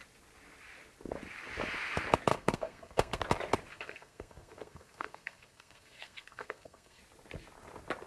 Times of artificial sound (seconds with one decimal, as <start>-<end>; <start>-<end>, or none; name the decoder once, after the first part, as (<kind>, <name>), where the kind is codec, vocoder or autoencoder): 2.3-3.2 (codec, SNAC); 3.7-7.0